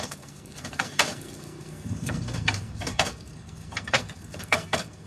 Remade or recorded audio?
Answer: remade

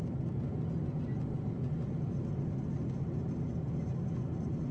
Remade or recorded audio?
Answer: recorded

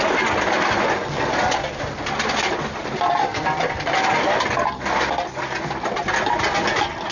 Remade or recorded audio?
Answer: recorded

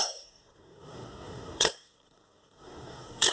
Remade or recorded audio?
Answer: remade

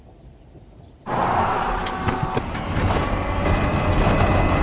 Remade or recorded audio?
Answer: recorded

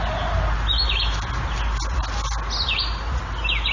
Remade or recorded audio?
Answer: recorded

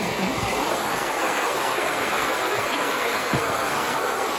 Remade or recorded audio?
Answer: remade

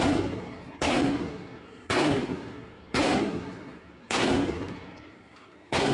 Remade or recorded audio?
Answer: remade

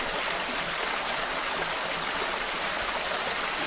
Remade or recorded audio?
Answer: recorded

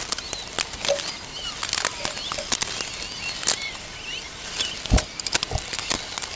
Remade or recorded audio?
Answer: recorded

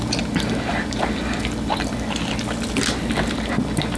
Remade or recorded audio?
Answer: recorded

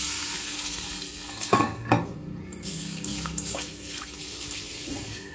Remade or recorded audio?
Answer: remade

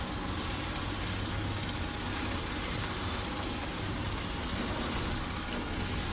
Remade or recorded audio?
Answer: recorded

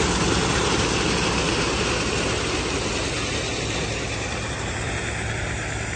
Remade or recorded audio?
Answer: recorded